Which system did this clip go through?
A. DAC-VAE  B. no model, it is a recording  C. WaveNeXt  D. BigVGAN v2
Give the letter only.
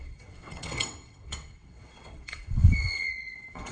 C